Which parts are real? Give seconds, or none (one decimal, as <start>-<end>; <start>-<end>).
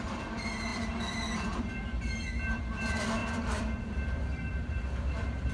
none